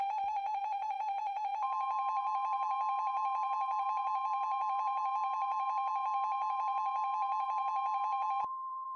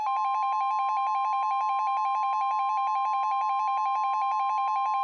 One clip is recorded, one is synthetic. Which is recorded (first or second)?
second